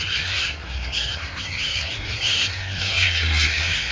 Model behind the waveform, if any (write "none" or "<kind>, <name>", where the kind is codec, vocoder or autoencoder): codec, SNAC